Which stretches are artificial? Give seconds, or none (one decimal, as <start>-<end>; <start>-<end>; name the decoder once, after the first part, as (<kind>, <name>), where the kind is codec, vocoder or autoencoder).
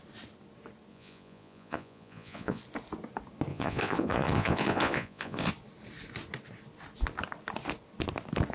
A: 0.9-2.6 (vocoder, Vocos); 3.5-5.5